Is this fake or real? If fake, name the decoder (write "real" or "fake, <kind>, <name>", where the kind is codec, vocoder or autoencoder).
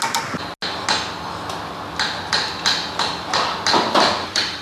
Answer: real